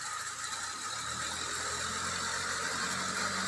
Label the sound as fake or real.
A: real